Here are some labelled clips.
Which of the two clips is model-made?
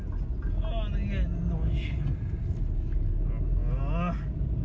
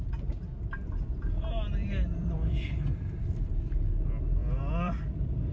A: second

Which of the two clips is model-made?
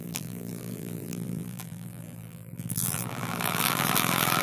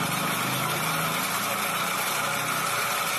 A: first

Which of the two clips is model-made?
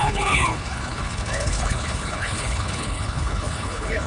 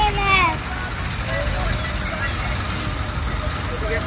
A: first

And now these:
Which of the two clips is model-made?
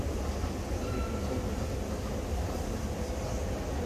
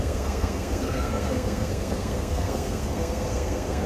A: second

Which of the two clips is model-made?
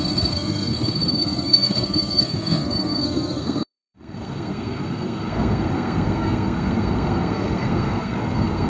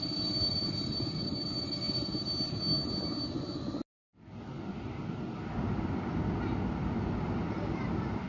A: first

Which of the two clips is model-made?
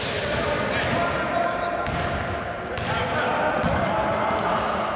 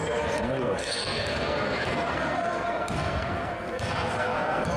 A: second